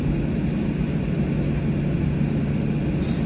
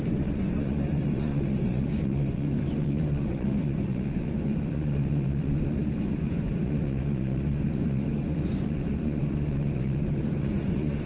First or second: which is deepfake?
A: second